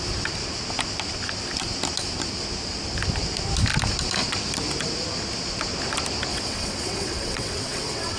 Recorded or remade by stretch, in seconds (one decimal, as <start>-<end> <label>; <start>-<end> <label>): 0.0-6.3 recorded; 6.3-8.2 remade